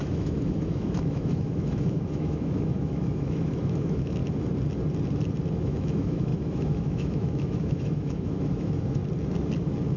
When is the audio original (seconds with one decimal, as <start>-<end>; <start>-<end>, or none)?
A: 4.2-5.6; 9.0-10.0